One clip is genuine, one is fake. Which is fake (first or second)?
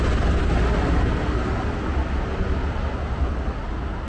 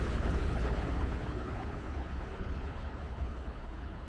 second